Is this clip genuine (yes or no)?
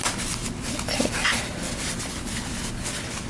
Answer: yes